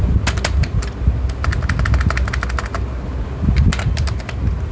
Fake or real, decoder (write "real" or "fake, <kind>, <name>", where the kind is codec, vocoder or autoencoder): real